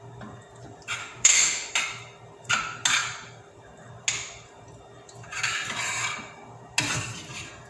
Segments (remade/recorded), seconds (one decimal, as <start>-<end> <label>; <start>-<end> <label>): 0.0-1.0 recorded; 1.0-1.7 remade; 1.7-7.7 recorded